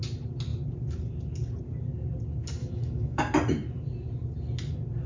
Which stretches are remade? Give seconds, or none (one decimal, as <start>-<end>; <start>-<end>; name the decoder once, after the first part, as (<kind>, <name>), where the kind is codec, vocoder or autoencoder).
2.6-3.2 (autoencoder, DAC-VAE)